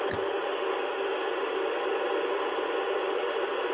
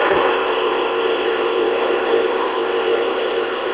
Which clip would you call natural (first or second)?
first